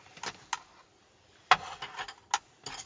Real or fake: real